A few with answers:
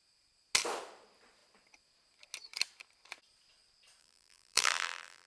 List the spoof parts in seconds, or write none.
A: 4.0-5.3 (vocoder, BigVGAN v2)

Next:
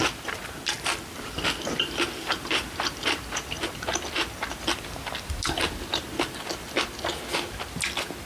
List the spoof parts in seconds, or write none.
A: 0.4-3.9 (vocoder, BigVGAN v2)

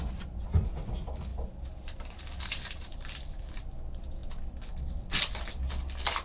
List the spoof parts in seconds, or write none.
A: none

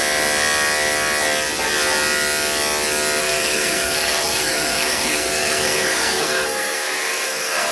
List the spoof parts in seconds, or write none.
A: 3.2-7.7 (codec, SNAC)

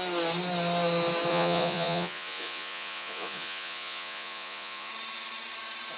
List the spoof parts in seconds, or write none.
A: 1.3-4.9 (vocoder, Vocos)

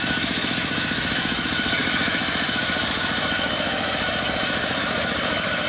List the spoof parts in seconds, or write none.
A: 0.0-5.7 (autoencoder, DAC-VAE)

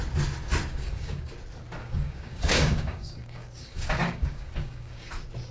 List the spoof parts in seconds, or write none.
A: 0.7-1.3 (codec, DAC); 1.8-5.1

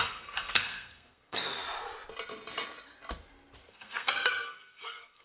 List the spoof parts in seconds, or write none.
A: 0.0-1.4 (codec, SNAC); 3.7-5.2